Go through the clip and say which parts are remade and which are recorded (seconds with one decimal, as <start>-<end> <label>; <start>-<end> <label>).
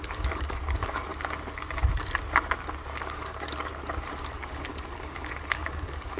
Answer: 0.0-1.1 remade; 1.1-3.0 recorded; 3.0-3.7 remade; 3.7-4.4 recorded; 4.4-6.2 remade